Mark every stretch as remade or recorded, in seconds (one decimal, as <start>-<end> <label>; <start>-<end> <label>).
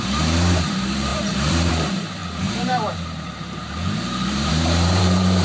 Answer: 0.0-5.4 remade